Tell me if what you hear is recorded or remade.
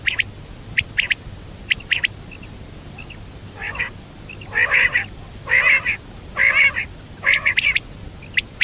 recorded